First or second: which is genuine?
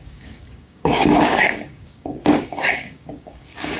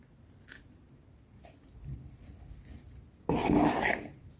second